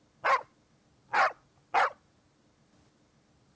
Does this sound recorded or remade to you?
recorded